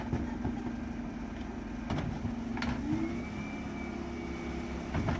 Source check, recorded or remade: recorded